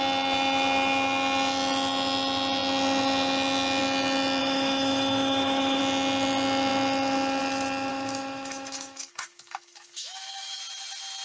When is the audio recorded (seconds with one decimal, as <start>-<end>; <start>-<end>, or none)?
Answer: 0.0-4.4; 5.8-7.9; 10.6-11.2